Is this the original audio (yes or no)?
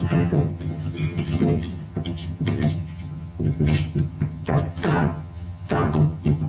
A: no